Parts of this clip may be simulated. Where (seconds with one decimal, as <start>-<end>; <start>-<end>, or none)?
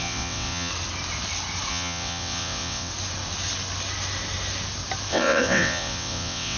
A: 0.0-0.7; 1.7-2.9; 5.1-6.6